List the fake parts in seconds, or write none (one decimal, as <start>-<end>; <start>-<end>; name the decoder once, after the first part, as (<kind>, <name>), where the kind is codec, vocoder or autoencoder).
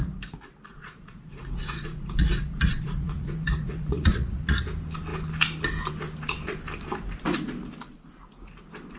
0.7-4.6 (vocoder, Vocos)